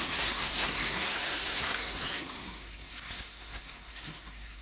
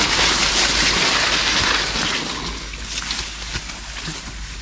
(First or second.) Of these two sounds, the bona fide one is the second